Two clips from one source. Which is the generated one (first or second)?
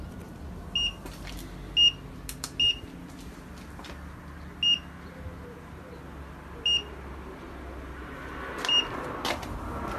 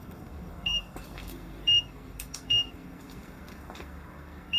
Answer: second